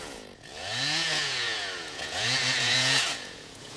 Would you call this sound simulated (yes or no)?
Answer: yes